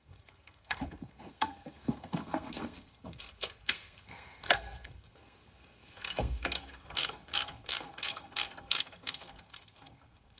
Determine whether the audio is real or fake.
fake